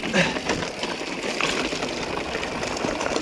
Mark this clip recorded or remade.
recorded